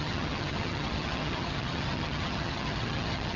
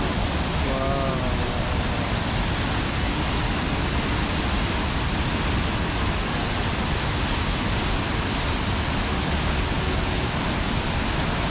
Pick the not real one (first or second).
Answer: first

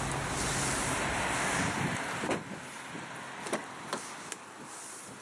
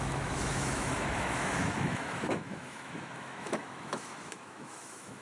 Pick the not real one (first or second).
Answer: second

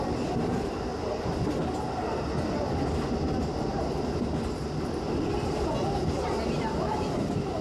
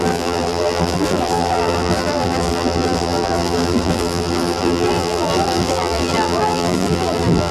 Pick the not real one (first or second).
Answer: second